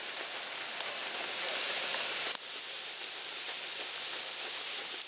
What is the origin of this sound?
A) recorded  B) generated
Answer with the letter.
A